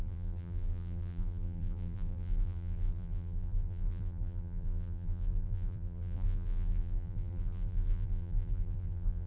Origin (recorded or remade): remade